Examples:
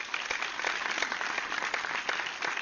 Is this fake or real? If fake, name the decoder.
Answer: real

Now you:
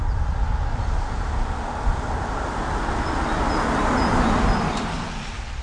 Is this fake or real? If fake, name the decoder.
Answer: real